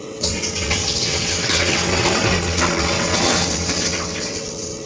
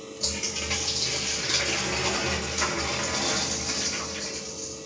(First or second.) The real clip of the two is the second